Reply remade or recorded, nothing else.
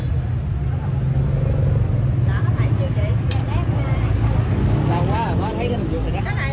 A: recorded